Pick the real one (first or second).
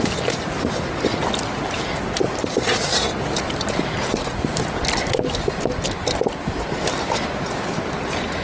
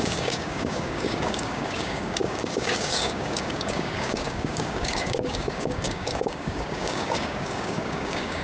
first